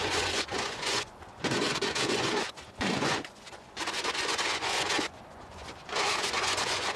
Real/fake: fake